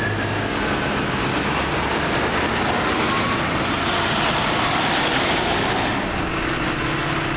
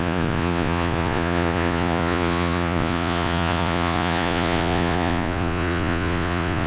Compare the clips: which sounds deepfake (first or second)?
second